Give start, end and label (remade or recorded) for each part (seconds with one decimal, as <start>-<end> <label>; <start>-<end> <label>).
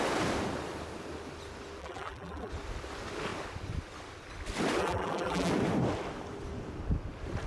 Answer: 0.0-1.8 recorded; 1.8-2.5 remade; 2.5-4.8 recorded; 4.8-5.5 remade; 5.5-7.5 recorded